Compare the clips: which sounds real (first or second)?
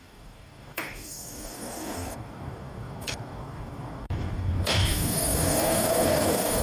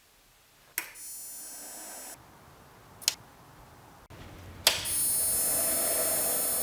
second